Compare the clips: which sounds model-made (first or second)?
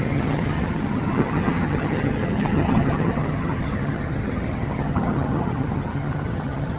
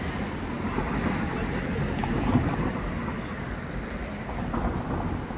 first